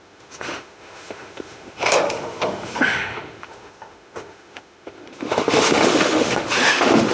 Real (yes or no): no